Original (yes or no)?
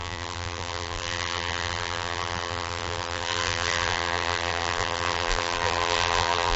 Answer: no